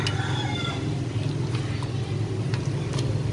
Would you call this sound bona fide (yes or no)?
yes